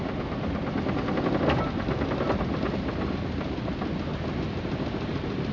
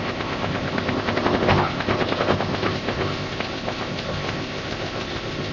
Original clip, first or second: first